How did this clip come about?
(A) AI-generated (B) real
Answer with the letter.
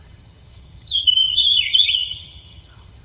A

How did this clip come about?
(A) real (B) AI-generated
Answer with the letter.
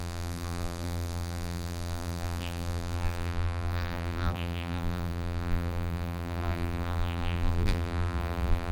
B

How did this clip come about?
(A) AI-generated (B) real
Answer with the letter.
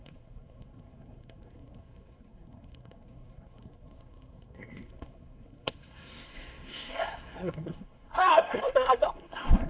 A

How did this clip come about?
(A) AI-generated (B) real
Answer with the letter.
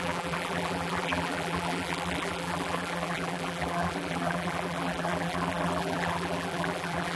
A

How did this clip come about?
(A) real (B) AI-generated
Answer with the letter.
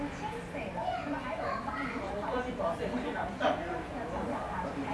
A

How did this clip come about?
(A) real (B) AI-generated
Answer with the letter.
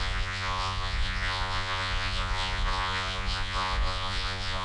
B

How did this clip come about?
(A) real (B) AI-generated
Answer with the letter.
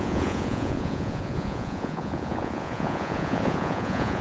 B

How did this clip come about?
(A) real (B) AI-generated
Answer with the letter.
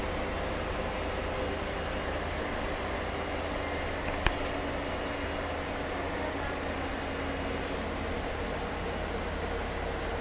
A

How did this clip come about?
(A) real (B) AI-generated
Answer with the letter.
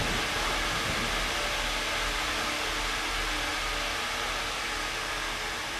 A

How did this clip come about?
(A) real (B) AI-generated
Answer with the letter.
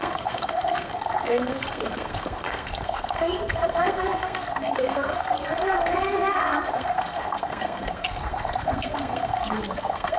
B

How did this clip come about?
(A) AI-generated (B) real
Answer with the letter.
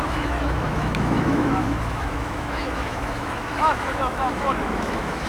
A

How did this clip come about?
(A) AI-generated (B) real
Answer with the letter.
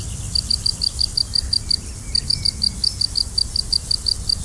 B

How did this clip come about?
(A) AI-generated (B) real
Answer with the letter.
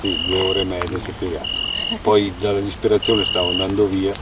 B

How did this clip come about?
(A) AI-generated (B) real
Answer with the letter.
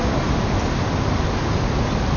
B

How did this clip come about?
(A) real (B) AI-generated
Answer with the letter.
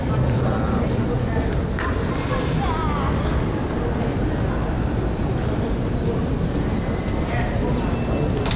A